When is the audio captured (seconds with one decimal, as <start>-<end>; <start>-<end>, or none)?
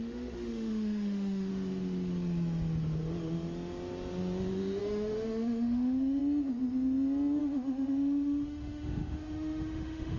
1.5-4.8; 6.2-7.4